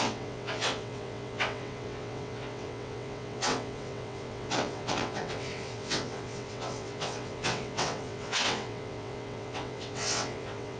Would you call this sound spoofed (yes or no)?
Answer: yes